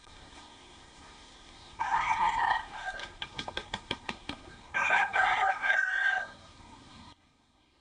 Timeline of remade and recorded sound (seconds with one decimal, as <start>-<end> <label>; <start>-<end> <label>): 0.0-7.8 remade